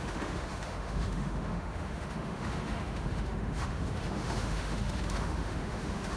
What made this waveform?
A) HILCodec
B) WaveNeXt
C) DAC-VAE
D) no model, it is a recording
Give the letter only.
C